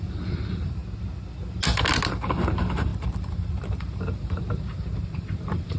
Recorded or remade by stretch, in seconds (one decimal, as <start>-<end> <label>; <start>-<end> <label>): 0.0-0.8 remade; 0.8-2.1 recorded; 2.1-5.8 remade

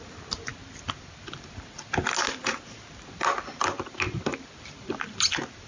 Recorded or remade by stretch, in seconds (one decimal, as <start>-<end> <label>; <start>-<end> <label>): 0.0-5.7 recorded

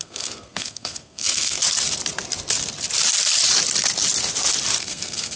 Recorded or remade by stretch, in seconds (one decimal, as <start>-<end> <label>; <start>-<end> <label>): 0.0-1.6 remade; 1.6-4.8 recorded; 4.8-5.4 remade